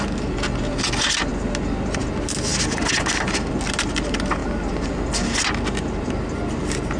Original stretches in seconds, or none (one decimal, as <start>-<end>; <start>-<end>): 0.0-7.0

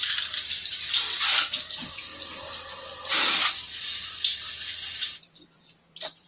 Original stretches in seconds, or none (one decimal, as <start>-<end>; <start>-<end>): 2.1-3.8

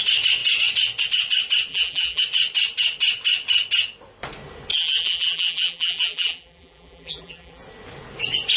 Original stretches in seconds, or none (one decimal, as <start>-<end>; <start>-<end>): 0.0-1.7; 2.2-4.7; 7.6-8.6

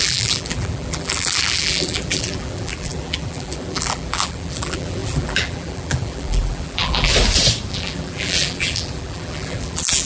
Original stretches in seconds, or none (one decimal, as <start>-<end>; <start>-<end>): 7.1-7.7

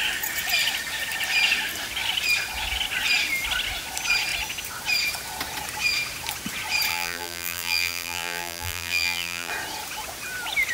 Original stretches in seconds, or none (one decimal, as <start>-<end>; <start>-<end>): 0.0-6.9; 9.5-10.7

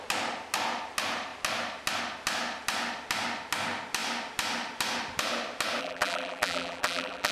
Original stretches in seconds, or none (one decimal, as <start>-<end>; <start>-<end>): 0.0-5.8